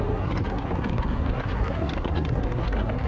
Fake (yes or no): yes